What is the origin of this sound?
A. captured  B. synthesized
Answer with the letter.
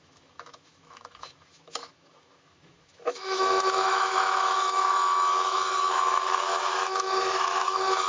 B